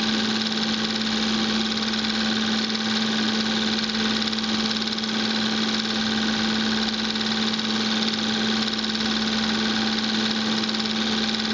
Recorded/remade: recorded